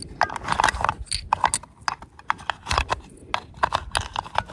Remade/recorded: recorded